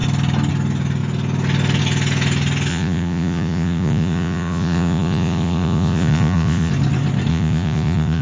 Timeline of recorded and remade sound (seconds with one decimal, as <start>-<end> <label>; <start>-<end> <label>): 0.0-2.7 recorded; 2.7-6.7 remade; 6.7-7.3 recorded; 7.3-8.2 remade